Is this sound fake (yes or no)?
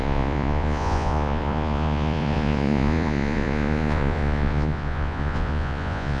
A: yes